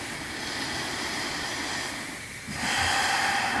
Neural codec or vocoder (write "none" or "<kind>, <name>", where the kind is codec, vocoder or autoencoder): none